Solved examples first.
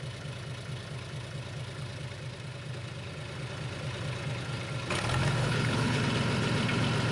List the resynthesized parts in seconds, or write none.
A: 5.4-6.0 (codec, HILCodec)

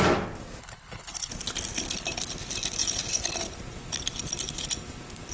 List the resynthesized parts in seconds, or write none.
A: 0.6-1.3 (codec, HILCodec)